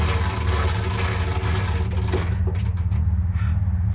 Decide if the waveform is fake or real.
real